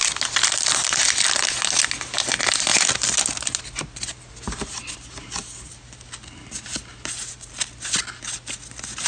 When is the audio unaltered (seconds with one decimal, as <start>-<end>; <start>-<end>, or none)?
0.0-9.1